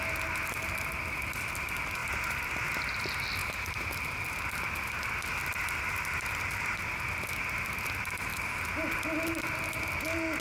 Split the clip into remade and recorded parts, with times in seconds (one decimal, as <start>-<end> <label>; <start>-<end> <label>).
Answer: 0.0-10.4 recorded